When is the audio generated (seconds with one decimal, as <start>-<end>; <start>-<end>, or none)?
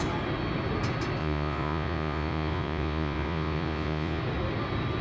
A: 1.2-4.2